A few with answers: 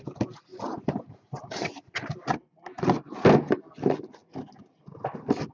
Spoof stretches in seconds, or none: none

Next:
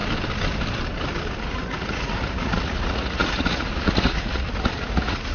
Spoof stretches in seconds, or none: 1.4-5.3

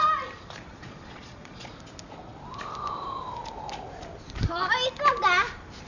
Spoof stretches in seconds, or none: 0.7-1.7